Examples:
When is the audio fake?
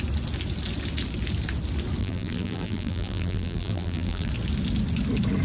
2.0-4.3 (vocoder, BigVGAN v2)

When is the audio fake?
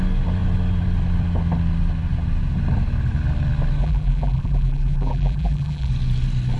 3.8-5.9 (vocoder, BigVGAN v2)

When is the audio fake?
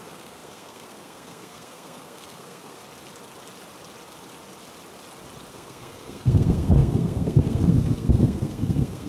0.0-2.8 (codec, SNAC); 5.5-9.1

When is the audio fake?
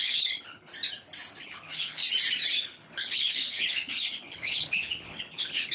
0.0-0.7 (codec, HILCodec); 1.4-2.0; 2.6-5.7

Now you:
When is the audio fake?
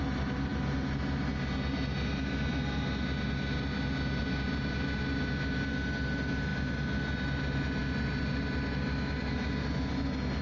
none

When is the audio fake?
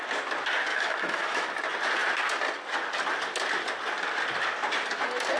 0.7-1.5 (autoencoder, DAC-VAE)